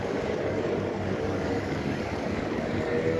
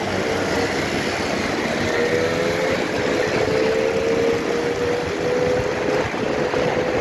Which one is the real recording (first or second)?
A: second